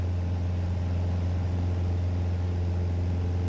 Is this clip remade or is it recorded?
recorded